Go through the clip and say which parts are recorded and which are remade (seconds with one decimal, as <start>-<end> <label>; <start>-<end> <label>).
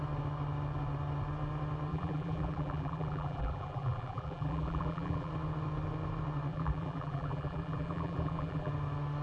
0.0-1.9 recorded; 1.9-5.3 remade; 5.3-6.5 recorded; 6.5-8.7 remade; 8.7-9.2 recorded